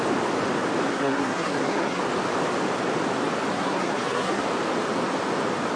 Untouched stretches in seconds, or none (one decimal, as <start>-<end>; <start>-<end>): 0.0-0.9; 2.0-3.5; 4.4-5.8